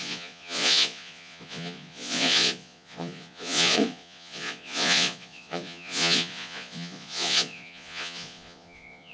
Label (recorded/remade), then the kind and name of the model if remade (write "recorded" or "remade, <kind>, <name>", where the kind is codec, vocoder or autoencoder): remade, vocoder, Vocos